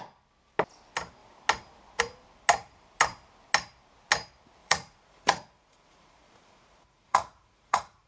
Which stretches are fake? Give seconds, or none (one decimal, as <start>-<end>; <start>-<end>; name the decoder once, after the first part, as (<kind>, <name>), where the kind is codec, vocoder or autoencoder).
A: 4.6-8.1 (vocoder, Vocos)